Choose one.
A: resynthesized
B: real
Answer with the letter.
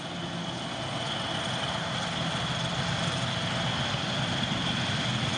B